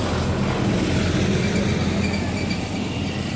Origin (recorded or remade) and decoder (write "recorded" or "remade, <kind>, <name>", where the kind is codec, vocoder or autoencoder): recorded